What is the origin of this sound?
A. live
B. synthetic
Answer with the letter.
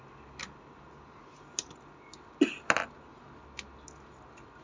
A